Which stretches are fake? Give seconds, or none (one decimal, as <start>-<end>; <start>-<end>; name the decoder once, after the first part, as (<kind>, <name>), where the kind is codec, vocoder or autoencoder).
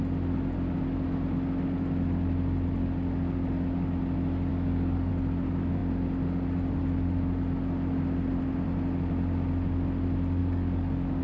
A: 4.5-5.1 (codec, DAC); 10.4-11.2